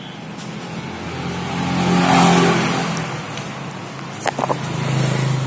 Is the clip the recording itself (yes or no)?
yes